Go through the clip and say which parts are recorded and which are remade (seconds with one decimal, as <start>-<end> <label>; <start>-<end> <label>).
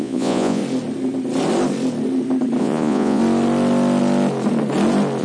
0.0-0.6 remade; 0.6-2.6 recorded; 2.6-3.2 remade; 3.2-5.2 recorded